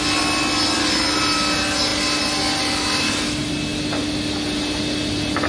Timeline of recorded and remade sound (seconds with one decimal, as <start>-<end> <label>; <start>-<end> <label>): 0.0-5.5 recorded